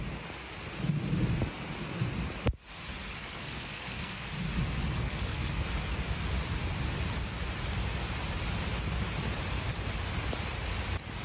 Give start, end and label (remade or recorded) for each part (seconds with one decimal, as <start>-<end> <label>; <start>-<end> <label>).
0.0-3.2 recorded; 3.2-4.3 remade; 4.3-5.0 recorded; 5.0-5.9 remade; 5.9-11.2 recorded